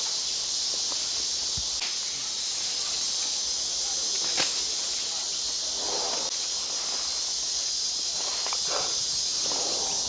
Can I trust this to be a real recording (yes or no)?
yes